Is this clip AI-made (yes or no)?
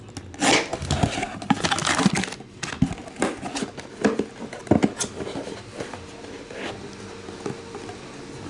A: no